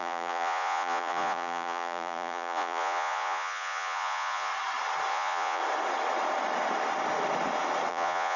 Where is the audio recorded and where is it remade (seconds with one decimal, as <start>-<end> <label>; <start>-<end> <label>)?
0.0-4.5 remade; 4.5-5.1 recorded; 5.1-5.6 remade; 5.6-7.9 recorded; 7.9-8.4 remade